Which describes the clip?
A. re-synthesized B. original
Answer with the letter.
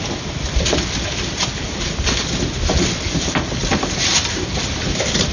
B